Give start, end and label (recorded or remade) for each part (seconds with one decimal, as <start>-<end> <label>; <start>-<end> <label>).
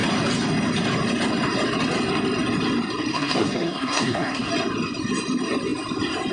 0.0-3.1 recorded; 3.1-4.5 remade; 4.5-6.3 recorded